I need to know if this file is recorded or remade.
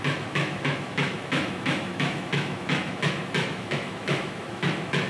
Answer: remade